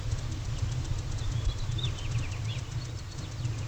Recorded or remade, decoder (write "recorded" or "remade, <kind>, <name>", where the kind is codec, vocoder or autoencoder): recorded